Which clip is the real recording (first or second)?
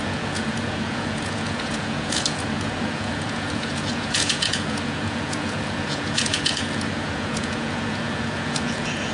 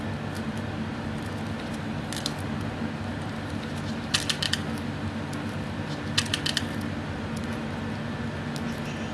second